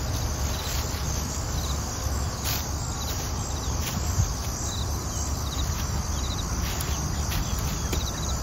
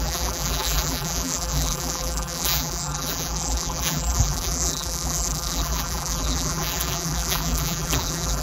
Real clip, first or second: first